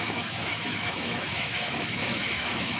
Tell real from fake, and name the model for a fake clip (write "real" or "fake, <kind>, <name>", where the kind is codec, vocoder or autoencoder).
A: fake, autoencoder, DAC-VAE